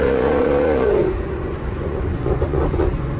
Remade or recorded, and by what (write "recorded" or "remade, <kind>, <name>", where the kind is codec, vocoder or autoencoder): remade, vocoder, Vocos